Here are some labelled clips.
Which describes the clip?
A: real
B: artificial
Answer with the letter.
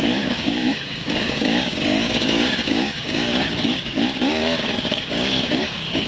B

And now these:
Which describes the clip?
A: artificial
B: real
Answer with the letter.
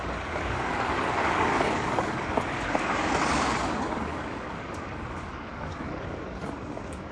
A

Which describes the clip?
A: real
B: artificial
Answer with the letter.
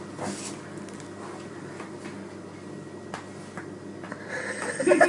A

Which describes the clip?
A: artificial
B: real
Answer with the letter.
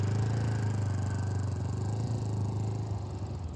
B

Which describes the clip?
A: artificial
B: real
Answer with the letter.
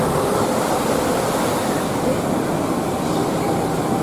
A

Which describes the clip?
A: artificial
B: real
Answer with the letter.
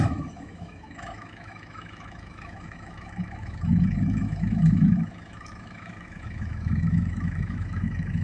A